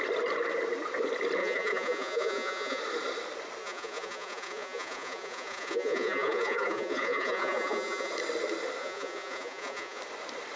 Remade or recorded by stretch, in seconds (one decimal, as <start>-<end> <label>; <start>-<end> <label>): 0.0-1.4 recorded; 1.4-2.8 remade; 2.8-3.6 recorded; 3.6-8.1 remade; 8.1-8.8 recorded; 8.8-10.0 remade; 10.0-10.6 recorded